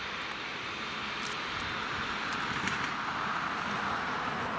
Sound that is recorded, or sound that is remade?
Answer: recorded